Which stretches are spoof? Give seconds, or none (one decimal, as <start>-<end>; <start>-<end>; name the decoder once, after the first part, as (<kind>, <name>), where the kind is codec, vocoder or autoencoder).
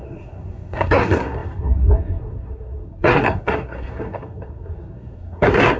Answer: 0.0-5.8 (codec, SNAC)